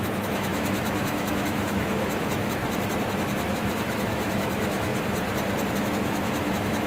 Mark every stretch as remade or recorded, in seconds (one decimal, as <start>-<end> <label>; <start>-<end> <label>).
0.0-2.6 remade; 2.6-3.5 recorded; 3.5-4.9 remade; 4.9-5.7 recorded; 5.7-6.9 remade

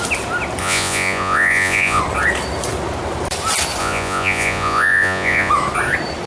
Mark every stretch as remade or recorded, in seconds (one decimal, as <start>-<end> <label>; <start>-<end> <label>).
0.0-0.6 recorded; 0.6-2.0 remade; 2.0-3.8 recorded; 3.8-5.5 remade; 5.5-6.3 recorded

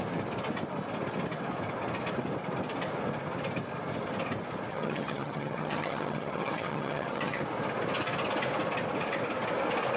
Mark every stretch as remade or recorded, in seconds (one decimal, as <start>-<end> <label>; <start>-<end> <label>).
0.0-4.7 recorded; 4.7-7.4 remade; 7.4-10.0 recorded

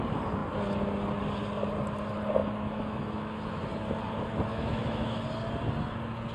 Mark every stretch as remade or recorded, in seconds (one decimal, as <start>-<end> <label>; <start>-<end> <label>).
0.0-2.4 recorded; 2.4-3.7 remade; 3.7-4.5 recorded; 4.5-5.2 remade; 5.2-6.3 recorded

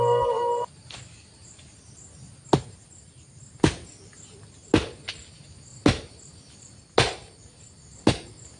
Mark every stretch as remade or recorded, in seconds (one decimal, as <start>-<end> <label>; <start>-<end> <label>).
0.0-8.6 recorded